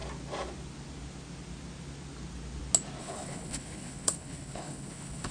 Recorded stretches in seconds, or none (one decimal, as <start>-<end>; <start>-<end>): 0.0-3.0